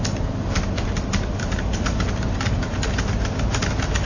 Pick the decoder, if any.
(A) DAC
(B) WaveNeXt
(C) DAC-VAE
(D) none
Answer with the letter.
D